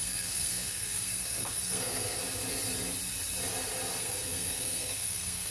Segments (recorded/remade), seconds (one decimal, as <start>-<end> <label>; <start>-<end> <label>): 0.0-2.2 remade; 2.2-4.0 recorded; 4.0-5.5 remade